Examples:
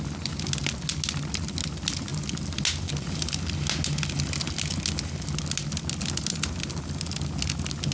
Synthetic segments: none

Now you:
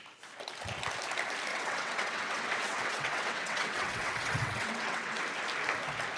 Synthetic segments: 1.5-5.2 (vocoder, WaveNeXt)

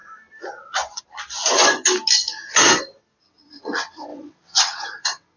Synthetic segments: 3.2-5.4 (vocoder, WaveNeXt)

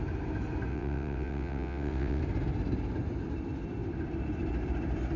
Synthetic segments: 0.7-2.2 (vocoder, WaveNeXt)

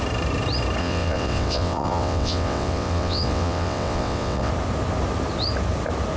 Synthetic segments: 0.8-4.5 (vocoder, WaveNeXt)

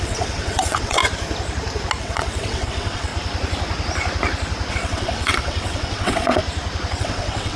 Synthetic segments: 0.0-1.0 (vocoder, WaveNeXt); 2.0-3.1; 4.7-6.4; 7.0-7.6